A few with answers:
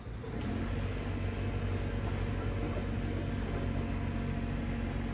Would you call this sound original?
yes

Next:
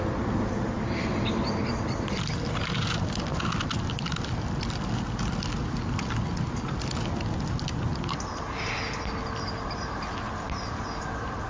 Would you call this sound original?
yes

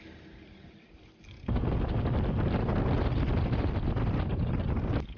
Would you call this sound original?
yes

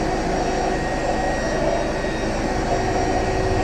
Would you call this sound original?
yes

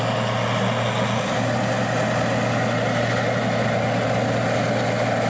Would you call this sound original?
yes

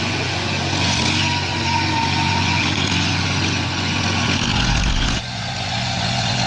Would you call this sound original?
no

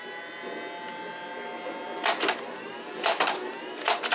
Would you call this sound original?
yes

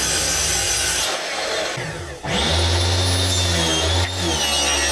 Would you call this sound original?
yes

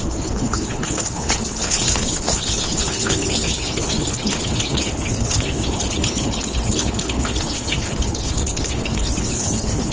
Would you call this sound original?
no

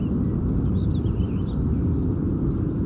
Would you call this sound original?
yes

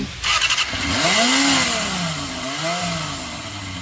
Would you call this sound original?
yes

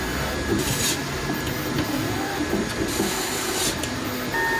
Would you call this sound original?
yes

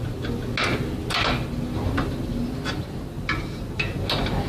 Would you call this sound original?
yes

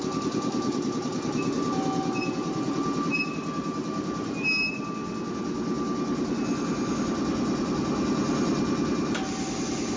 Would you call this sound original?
yes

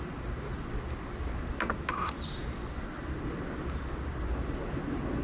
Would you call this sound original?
yes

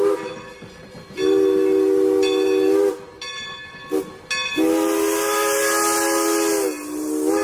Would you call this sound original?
yes